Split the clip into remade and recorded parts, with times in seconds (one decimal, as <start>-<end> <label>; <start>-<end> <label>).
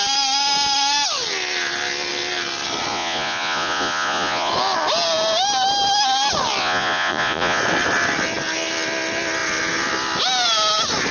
0.0-2.9 recorded; 2.9-4.5 remade; 4.5-6.6 recorded; 6.6-7.6 remade; 7.6-11.1 recorded